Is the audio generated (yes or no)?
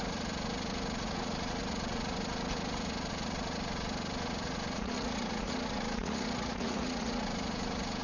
yes